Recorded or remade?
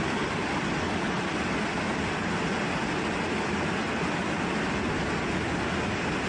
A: recorded